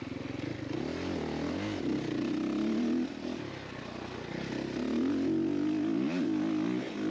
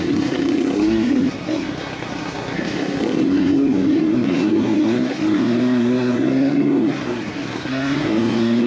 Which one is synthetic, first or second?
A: second